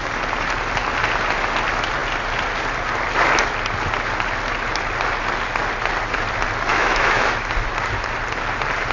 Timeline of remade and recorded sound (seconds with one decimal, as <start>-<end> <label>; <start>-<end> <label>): 0.0-6.7 recorded; 6.7-7.5 remade; 7.5-8.9 recorded